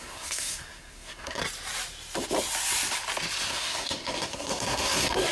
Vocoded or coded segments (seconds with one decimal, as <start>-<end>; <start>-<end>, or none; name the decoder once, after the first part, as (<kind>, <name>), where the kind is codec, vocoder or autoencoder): 0.0-1.4 (codec, SNAC); 3.5-5.3